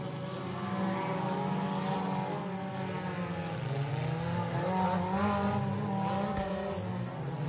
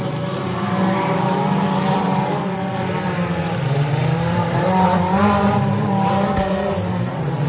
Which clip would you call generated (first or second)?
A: second